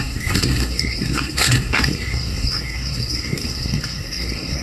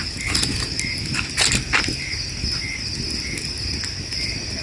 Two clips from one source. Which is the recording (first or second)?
second